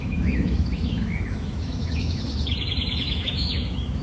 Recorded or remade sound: remade